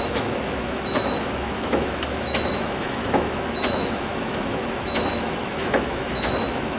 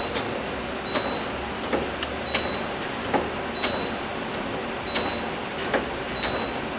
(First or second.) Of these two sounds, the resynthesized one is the first